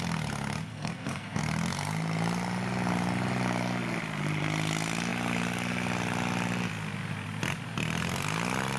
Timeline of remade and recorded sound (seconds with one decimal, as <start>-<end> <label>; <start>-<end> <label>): 0.0-0.7 recorded; 0.7-1.4 remade; 1.4-8.8 recorded